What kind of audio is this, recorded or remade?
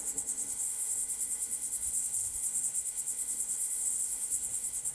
remade